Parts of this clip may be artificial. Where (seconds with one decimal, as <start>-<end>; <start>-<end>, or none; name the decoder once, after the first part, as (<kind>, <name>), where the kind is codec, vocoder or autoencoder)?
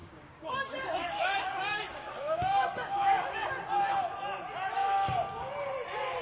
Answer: 0.0-3.5 (codec, DAC); 4.8-5.5